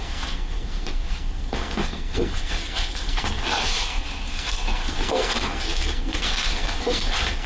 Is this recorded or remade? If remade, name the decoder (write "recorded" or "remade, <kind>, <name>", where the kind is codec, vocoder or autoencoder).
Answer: remade, codec, SNAC